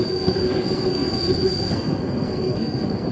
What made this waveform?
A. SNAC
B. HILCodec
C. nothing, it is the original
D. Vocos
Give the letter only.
A